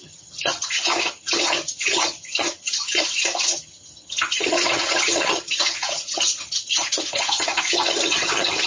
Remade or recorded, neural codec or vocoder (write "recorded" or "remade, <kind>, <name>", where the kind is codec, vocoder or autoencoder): remade, vocoder, HiFi-GAN